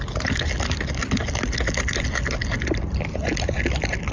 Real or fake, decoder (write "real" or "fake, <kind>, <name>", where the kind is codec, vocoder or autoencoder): real